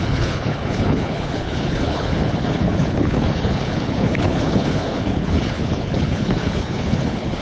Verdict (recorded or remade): remade